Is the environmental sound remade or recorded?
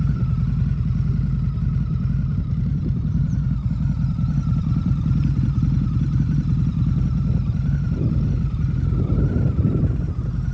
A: remade